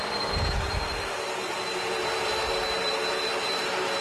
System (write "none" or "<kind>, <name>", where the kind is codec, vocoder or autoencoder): vocoder, BigVGAN v2